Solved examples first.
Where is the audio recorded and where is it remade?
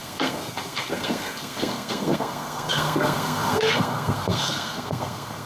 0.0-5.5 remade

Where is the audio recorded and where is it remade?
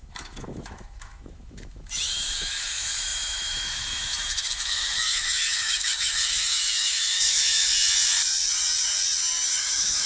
0.0-7.7 remade; 7.7-9.6 recorded; 9.6-10.1 remade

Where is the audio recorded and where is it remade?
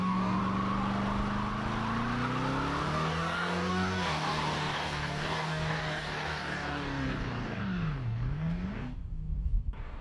0.0-0.4 remade; 0.4-2.8 recorded; 2.8-10.0 remade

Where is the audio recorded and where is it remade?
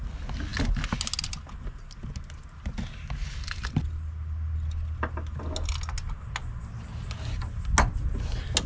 0.0-8.7 recorded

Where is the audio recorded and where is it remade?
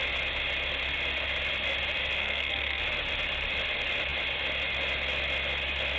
0.0-2.2 recorded; 2.2-2.8 remade; 2.8-6.0 recorded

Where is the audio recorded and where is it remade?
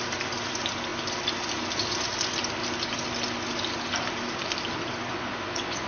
0.0-5.1 recorded; 5.1-5.9 remade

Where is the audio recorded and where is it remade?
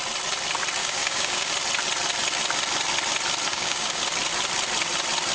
0.0-0.8 recorded; 0.8-1.5 remade; 1.5-3.5 recorded; 3.5-4.0 remade; 4.0-5.3 recorded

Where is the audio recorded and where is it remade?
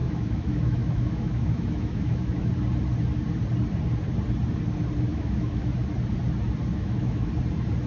0.0-2.5 remade; 2.5-5.1 recorded; 5.1-5.7 remade; 5.7-6.7 recorded; 6.7-7.3 remade; 7.3-7.9 recorded